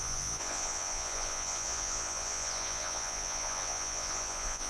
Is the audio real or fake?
fake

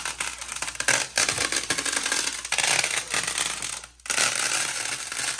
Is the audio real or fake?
real